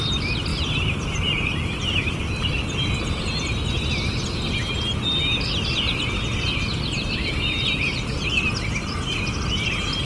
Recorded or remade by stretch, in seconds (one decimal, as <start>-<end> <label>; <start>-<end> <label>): 0.0-10.0 recorded